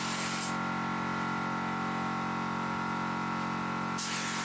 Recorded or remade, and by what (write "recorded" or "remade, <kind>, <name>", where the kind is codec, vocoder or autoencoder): recorded